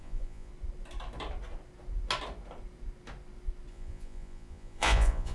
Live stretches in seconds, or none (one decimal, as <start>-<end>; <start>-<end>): 0.5-3.7